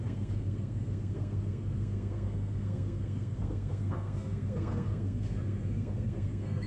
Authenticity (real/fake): fake